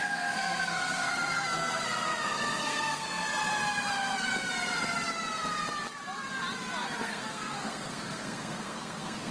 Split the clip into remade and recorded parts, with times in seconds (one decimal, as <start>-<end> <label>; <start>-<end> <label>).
0.0-3.2 remade; 3.2-3.9 recorded; 3.9-4.3 remade; 4.3-6.8 recorded; 6.8-9.3 remade